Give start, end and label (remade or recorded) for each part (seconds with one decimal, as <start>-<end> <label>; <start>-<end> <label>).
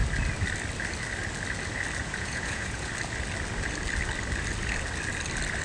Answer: 0.0-2.0 recorded; 2.0-2.9 remade; 2.9-5.6 recorded